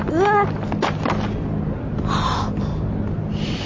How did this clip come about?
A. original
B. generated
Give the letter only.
A